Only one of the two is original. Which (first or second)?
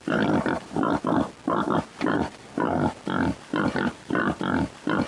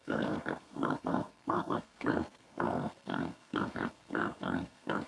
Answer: first